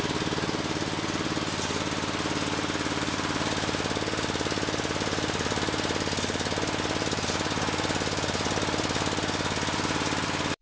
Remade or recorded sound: remade